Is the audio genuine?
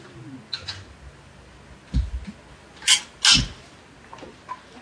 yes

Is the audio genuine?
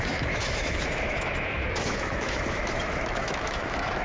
no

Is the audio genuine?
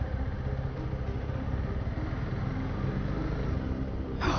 yes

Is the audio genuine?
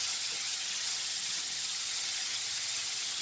no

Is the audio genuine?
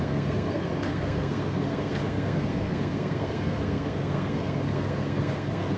no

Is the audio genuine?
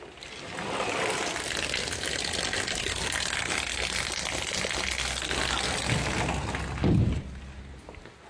yes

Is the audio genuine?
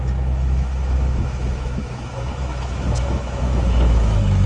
no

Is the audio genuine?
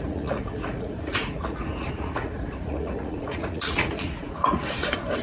no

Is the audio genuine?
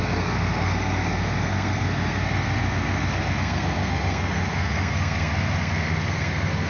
no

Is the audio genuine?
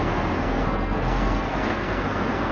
no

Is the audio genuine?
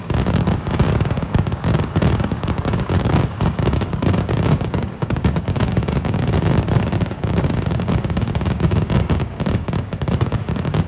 no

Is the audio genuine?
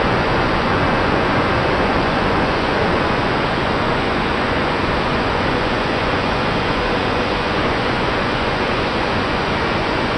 no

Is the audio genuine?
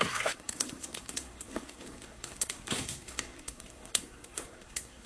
no